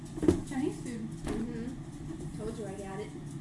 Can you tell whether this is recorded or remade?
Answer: recorded